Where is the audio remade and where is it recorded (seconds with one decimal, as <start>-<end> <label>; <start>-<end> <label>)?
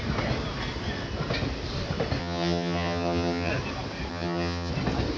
0.0-2.2 recorded; 2.2-3.5 remade; 3.5-4.1 recorded; 4.1-4.7 remade; 4.7-5.2 recorded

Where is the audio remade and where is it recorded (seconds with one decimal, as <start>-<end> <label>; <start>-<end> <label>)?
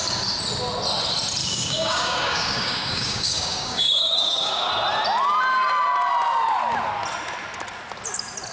0.0-1.4 recorded; 1.4-4.7 remade; 4.7-8.5 recorded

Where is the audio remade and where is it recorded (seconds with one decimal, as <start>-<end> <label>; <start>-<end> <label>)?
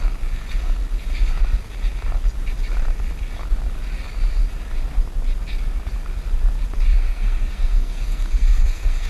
0.0-6.9 recorded; 6.9-9.1 remade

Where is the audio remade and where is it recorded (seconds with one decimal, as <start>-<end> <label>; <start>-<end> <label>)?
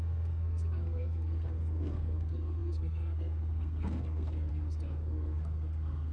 0.0-6.1 remade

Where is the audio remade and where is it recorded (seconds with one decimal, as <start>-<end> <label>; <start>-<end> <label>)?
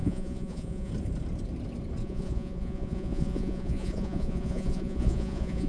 0.0-0.9 remade; 0.9-2.0 recorded; 2.0-5.7 remade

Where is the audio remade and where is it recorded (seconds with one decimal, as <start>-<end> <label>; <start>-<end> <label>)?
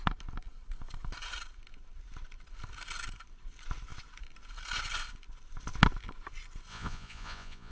0.0-6.7 recorded; 6.7-7.7 remade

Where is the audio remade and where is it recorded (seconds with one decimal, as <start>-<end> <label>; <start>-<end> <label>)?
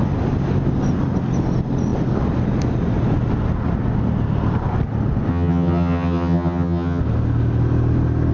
0.0-5.3 recorded; 5.3-7.0 remade; 7.0-8.3 recorded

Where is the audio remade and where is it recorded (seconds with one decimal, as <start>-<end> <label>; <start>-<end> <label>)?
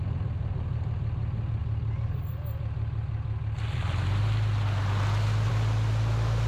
0.0-6.5 recorded